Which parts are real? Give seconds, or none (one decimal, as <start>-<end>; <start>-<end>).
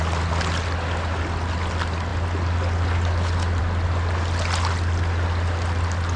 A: 0.0-6.2